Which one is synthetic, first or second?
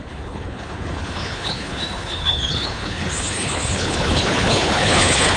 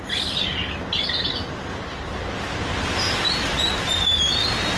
first